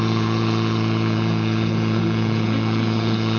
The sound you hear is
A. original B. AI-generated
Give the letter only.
B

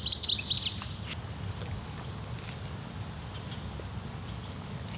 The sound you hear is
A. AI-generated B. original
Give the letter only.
B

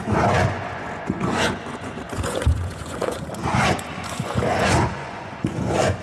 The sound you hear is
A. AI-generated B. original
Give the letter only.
A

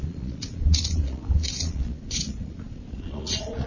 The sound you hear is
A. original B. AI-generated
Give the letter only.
B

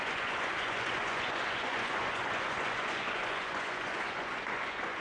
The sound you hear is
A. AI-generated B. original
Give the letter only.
A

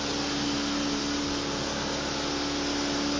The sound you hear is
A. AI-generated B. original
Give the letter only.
B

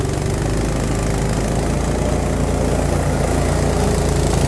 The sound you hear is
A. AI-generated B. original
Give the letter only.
B